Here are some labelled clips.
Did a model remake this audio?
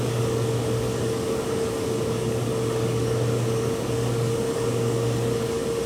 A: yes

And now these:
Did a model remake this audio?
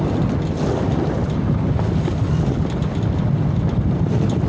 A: no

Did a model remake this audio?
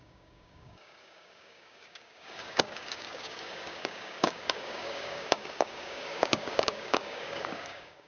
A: yes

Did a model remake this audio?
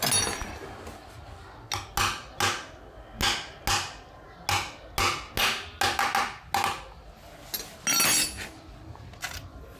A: no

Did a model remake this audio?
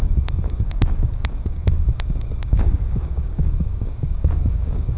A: yes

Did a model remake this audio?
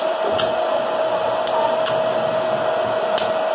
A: no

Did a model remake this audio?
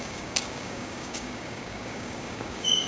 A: yes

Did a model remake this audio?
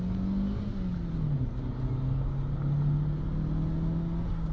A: no